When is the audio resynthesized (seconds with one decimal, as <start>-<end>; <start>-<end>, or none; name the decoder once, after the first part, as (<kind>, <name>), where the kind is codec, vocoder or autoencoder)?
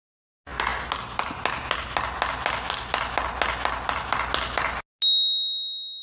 none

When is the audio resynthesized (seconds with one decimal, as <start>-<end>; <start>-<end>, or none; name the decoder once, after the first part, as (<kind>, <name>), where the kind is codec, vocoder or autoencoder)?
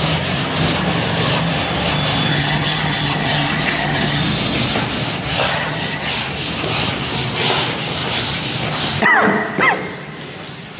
2.3-4.2 (vocoder, HiFi-GAN); 5.5-6.1